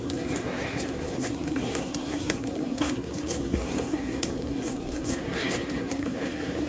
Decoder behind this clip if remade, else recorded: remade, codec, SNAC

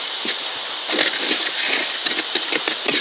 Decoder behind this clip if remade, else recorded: recorded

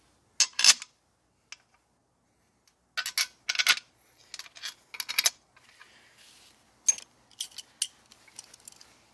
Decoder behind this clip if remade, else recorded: recorded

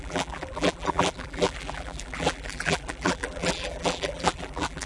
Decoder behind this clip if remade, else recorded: remade, vocoder, BigVGAN v2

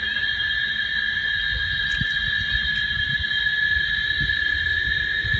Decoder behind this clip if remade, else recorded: recorded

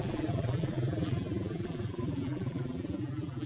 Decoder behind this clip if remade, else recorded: remade, vocoder, BigVGAN v2